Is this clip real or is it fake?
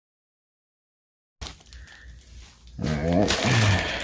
real